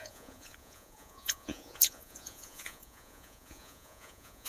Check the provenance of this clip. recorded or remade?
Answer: remade